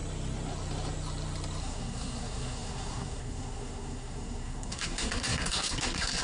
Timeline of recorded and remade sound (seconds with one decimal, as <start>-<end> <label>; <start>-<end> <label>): 0.0-1.6 recorded; 1.6-6.2 remade